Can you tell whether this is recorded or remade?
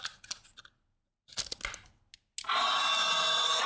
recorded